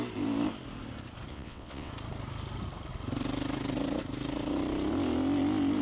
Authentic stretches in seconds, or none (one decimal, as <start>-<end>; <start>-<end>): 0.0-1.3; 1.9-5.8